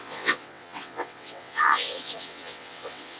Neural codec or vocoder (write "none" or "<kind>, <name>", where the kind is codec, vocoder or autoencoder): vocoder, WaveNeXt